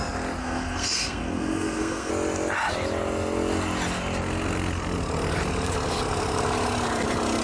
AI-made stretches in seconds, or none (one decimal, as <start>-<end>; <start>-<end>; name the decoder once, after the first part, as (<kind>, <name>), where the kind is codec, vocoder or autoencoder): 0.4-2.1 (codec, SNAC)